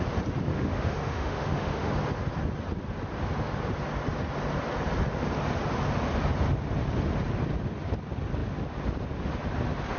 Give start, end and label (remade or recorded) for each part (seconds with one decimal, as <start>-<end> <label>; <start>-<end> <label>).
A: 0.0-0.5 recorded; 0.5-1.9 remade; 1.9-10.0 recorded

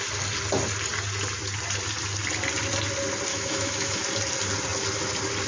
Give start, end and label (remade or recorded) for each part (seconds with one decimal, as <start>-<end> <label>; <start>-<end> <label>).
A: 0.0-3.3 recorded; 3.3-4.0 remade; 4.0-5.5 recorded